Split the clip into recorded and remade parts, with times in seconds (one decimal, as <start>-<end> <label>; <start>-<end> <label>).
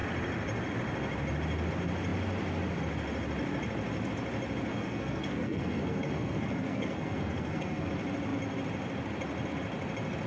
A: 0.0-4.7 recorded; 4.7-7.9 remade; 7.9-10.3 recorded